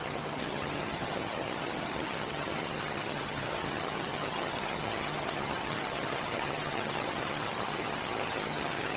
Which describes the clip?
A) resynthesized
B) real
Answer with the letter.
A